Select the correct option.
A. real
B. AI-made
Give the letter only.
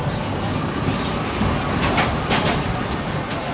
B